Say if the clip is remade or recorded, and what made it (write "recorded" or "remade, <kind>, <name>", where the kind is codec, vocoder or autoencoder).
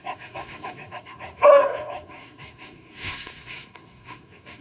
remade, codec, SNAC